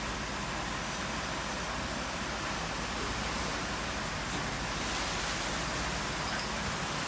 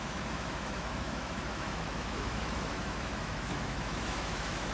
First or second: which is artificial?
second